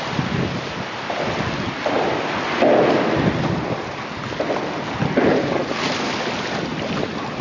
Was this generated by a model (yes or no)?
no